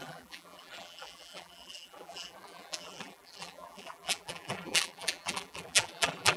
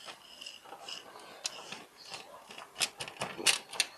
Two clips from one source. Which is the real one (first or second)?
second